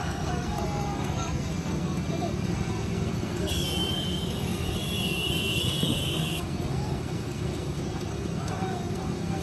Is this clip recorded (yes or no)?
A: no